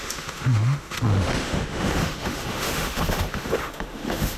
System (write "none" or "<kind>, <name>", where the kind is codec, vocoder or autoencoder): autoencoder, DAC-VAE